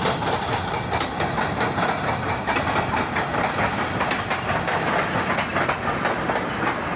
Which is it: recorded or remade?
recorded